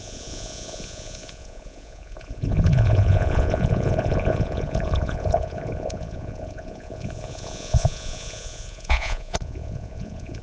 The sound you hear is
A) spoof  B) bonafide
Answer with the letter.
A